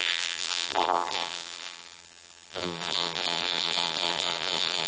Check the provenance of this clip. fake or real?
fake